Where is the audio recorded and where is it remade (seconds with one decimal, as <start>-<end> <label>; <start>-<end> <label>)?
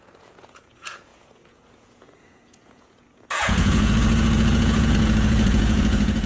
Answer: 0.0-6.3 remade